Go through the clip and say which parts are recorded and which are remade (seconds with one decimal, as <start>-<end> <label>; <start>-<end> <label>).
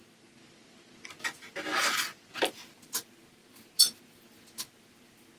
0.0-5.4 recorded